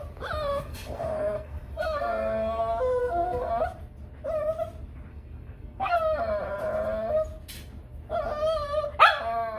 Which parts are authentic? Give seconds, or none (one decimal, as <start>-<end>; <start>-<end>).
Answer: 0.0-0.5; 2.6-3.0; 3.5-5.1; 6.0-9.6